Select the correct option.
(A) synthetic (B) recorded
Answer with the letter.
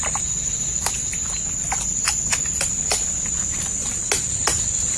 B